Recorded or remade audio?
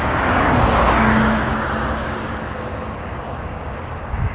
remade